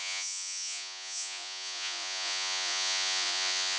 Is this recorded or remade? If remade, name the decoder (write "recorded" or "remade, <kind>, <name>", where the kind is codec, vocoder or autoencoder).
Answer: remade, vocoder, Vocos